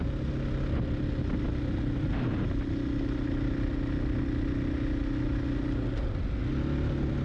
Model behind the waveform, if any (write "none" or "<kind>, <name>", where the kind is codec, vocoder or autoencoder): none